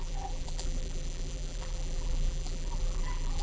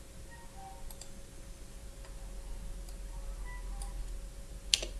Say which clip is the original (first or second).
second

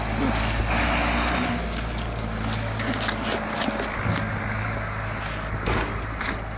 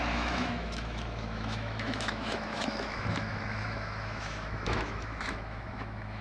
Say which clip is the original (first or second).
first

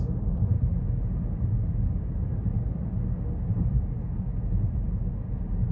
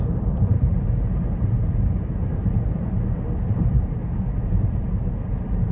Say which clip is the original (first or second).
first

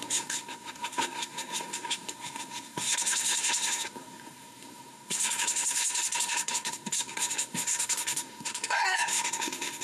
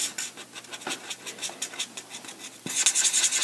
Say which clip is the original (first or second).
second